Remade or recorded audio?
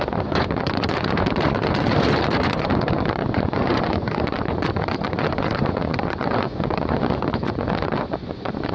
remade